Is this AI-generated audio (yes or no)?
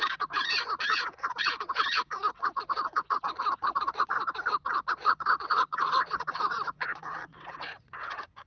yes